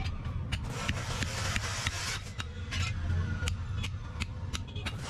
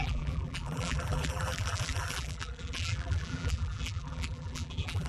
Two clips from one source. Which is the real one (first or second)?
first